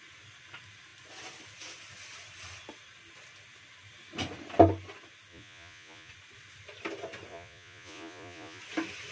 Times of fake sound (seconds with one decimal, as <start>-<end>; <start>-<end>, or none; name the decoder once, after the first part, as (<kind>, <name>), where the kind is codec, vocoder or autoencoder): 5.3-6.1 (vocoder, Vocos); 7.3-8.6